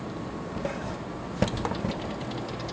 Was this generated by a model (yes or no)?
no